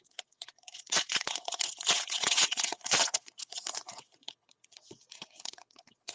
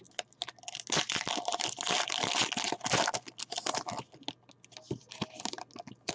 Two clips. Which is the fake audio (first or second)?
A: first